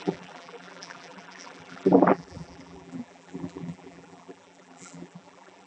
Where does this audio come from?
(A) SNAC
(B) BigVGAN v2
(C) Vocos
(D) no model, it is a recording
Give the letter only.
B